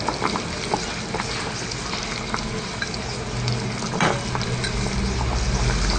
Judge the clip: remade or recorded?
recorded